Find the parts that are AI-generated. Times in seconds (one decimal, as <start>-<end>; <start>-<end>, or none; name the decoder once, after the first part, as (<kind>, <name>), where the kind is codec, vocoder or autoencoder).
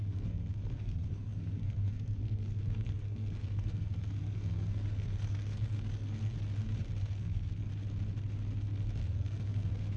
0.0-6.3 (codec, SNAC); 7.0-7.7; 9.0-10.0